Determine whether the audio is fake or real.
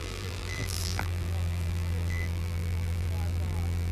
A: fake